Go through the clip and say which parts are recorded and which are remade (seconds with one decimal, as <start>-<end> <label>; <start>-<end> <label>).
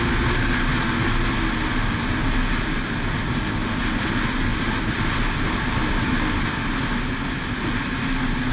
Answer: 0.0-8.5 recorded